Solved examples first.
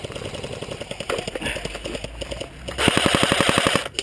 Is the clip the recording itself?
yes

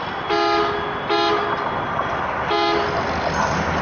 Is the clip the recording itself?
yes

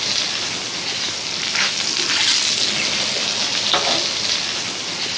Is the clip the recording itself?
yes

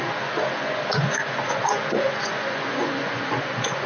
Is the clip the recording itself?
no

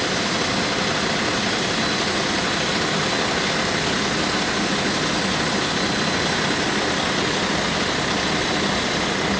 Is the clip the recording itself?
yes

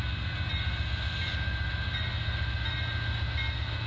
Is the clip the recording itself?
yes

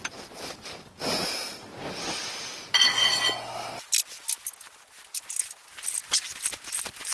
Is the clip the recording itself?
yes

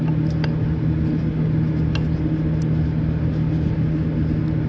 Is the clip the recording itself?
yes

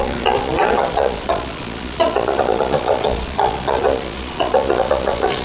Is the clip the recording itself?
no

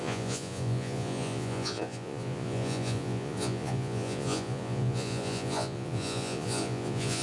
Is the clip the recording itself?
no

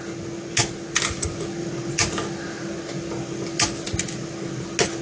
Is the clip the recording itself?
yes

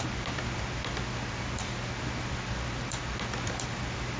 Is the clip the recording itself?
yes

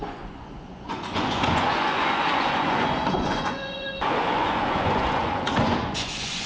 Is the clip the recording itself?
no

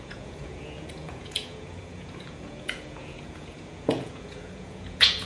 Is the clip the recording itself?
no